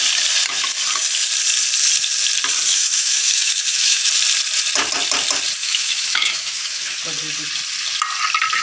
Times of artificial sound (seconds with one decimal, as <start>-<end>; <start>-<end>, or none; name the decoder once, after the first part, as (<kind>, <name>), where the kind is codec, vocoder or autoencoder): 2.7-4.1 (autoencoder, DAC-VAE); 5.6-7.0